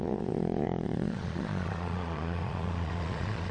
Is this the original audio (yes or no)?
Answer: no